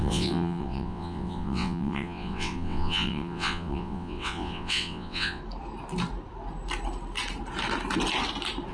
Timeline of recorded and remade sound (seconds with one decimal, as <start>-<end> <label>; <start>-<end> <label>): 0.0-5.4 remade; 5.4-8.7 recorded